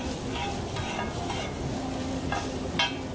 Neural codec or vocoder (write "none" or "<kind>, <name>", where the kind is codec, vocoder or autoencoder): none